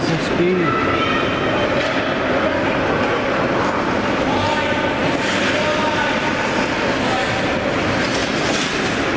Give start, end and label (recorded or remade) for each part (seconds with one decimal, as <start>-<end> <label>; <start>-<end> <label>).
0.0-9.2 recorded